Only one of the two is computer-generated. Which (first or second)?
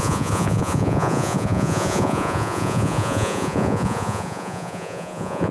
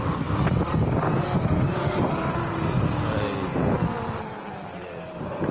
first